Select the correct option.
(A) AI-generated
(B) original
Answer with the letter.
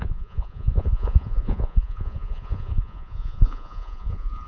A